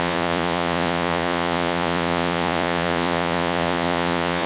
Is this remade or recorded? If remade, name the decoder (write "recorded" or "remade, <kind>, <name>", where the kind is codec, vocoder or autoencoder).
remade, vocoder, Vocos